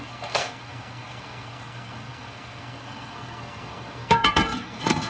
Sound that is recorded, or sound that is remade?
remade